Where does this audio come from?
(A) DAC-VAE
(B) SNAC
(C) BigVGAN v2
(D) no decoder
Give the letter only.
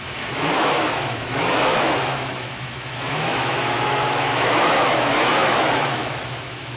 A